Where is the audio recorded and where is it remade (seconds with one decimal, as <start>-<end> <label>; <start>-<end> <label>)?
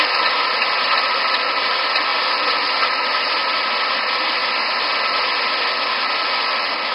0.0-6.9 recorded